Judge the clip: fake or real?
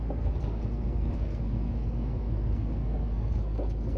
fake